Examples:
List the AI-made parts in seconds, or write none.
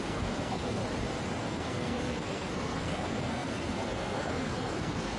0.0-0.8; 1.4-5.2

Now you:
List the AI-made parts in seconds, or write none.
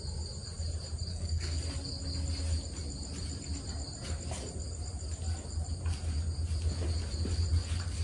1.1-1.6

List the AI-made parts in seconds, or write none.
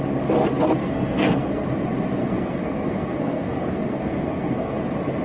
0.8-1.7; 2.2-4.8